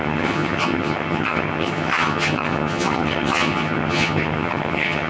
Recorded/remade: remade